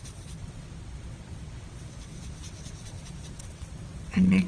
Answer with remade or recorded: remade